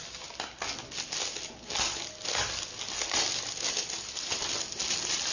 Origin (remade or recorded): recorded